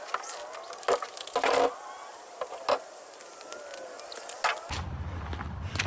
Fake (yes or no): no